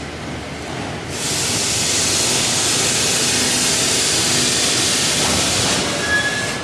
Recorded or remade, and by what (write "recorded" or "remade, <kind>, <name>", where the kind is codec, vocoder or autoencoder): recorded